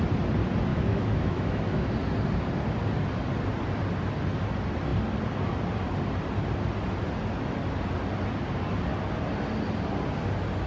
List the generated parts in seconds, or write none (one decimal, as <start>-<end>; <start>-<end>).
0.7-1.9